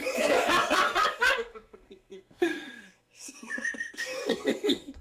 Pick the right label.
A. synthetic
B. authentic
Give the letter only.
A